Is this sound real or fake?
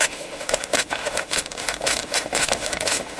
fake